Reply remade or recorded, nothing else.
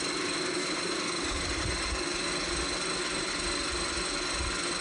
recorded